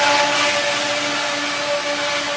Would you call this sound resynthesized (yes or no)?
no